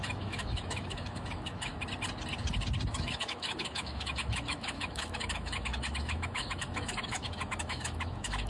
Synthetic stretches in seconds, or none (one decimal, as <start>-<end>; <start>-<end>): 0.0-1.7; 2.9-8.5